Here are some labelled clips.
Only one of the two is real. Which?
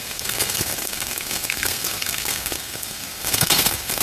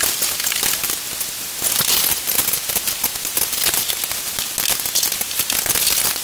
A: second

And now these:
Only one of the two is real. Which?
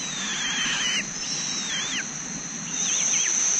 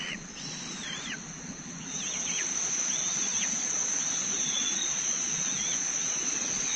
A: first